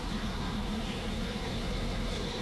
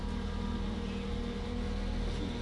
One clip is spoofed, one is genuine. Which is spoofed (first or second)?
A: first